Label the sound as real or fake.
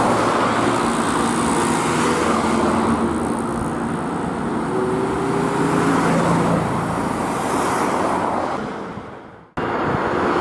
real